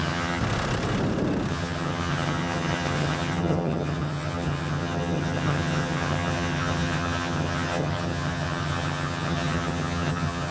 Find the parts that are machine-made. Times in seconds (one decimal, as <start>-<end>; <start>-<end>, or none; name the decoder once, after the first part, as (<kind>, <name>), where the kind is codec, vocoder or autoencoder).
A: 0.0-0.4 (vocoder, HiFi-GAN); 1.5-10.5